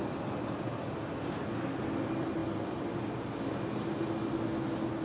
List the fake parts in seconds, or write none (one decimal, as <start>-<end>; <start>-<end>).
none